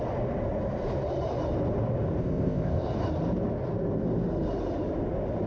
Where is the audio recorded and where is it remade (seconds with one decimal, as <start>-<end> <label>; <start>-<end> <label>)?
0.0-2.2 recorded; 2.2-2.9 remade; 2.9-5.5 recorded